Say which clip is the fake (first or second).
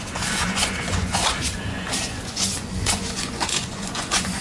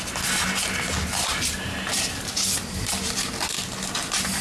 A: first